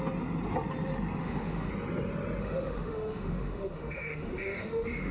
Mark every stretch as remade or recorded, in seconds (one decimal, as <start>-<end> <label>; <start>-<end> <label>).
0.0-1.2 recorded; 1.2-1.7 remade; 1.7-2.4 recorded; 2.4-5.1 remade